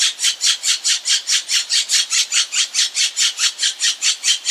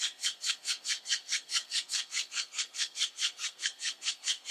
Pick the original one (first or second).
first